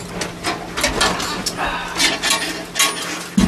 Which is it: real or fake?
real